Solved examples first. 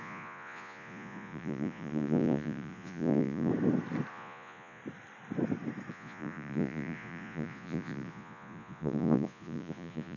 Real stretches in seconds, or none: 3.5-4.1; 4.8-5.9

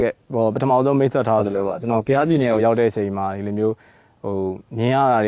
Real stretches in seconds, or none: 0.0-1.4; 2.6-5.3

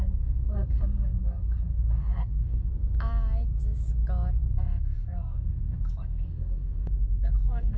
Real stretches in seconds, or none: 2.7-4.5

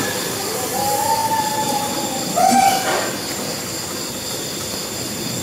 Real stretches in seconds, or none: 0.0-5.4